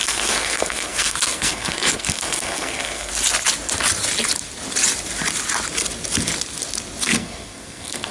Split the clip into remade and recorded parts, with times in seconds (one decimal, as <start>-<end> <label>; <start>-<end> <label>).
0.0-3.1 remade; 3.1-7.0 recorded; 7.0-8.1 remade